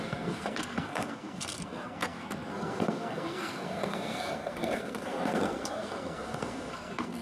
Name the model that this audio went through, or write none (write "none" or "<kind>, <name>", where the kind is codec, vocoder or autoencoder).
codec, SNAC